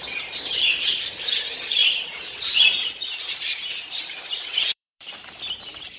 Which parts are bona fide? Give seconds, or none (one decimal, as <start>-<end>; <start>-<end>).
0.0-1.8; 5.4-6.0